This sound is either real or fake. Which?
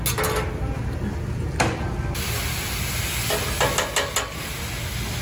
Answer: real